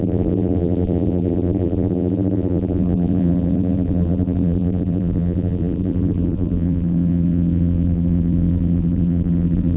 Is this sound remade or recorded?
remade